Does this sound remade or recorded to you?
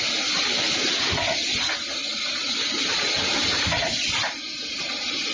recorded